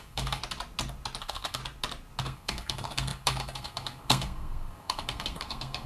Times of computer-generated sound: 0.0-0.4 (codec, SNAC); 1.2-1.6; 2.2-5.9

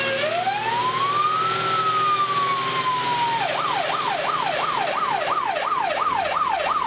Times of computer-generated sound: none

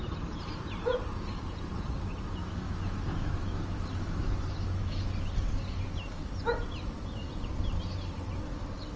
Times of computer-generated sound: 2.4-5.0 (autoencoder, DAC-VAE)

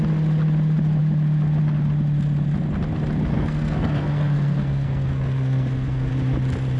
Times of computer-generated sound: 3.3-6.1 (codec, SNAC)

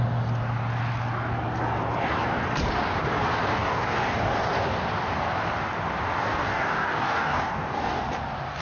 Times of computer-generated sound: 3.5-4.5 (codec, DAC); 6.2-8.0